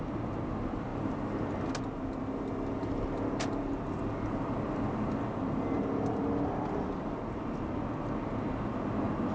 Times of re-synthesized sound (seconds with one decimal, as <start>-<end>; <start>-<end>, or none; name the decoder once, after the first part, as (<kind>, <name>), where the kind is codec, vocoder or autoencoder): none